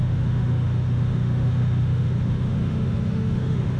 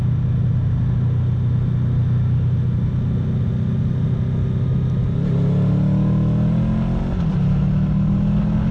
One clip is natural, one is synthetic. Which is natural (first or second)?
second